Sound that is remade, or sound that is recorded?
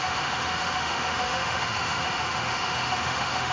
remade